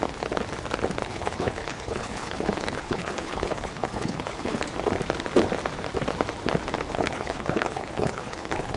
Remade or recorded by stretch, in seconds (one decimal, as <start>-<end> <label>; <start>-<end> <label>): 0.0-1.0 recorded; 1.0-4.6 remade; 4.6-6.9 recorded; 6.9-8.8 remade